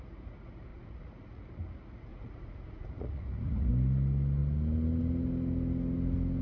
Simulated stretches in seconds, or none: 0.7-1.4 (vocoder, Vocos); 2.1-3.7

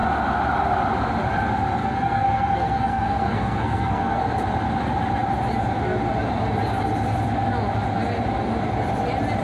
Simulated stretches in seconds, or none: 1.8-4.2 (codec, SNAC)